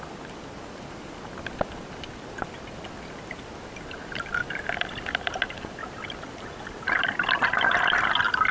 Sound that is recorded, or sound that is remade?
recorded